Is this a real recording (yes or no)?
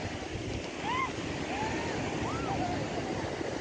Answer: yes